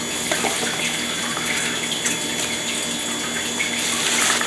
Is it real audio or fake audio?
real